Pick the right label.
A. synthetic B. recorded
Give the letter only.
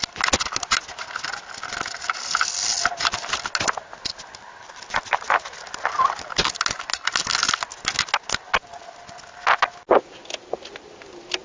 B